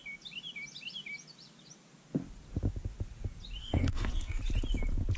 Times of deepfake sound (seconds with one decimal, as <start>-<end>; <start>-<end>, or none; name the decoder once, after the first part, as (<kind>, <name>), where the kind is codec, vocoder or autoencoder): 3.6-4.4 (codec, SNAC)